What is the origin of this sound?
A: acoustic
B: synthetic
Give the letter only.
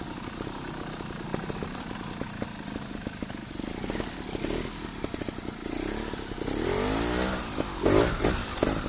A